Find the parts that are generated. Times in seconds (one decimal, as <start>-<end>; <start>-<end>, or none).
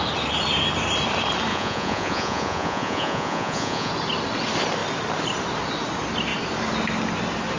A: 1.5-3.9